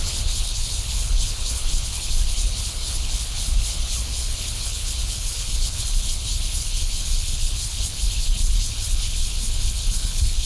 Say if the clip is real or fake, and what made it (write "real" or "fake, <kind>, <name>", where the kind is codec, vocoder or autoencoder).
fake, codec, HILCodec